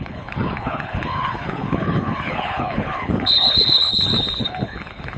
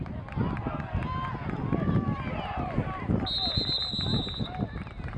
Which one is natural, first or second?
second